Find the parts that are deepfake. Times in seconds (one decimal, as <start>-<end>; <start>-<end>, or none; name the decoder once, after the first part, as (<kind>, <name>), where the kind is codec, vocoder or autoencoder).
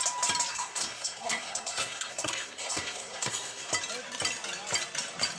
0.5-3.7 (codec, SNAC)